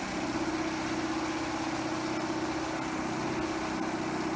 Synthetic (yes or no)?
no